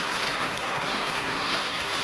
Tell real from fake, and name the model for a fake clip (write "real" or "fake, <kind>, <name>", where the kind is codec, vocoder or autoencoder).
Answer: fake, codec, SNAC